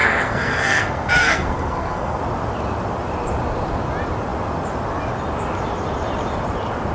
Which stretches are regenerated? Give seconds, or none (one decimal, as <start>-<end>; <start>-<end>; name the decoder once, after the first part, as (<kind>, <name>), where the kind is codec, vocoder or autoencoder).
0.0-2.2 (codec, SNAC)